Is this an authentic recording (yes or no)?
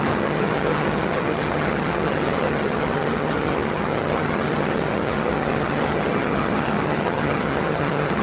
no